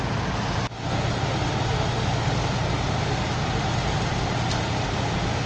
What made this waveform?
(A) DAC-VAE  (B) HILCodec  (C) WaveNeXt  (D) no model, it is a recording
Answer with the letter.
D